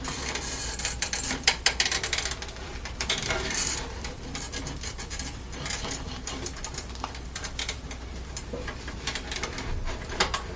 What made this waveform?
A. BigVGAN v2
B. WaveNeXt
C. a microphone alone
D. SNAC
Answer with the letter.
A